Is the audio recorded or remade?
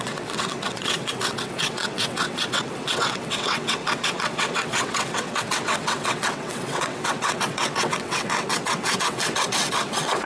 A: remade